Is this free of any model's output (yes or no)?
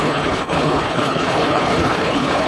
no